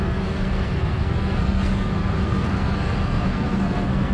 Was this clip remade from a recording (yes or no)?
yes